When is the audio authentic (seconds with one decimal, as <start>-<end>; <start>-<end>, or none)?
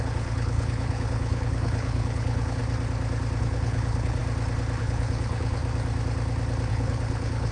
2.6-3.4; 4.2-4.8; 5.6-6.7